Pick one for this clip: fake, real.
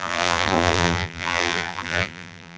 fake